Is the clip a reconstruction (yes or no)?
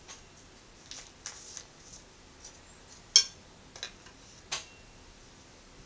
no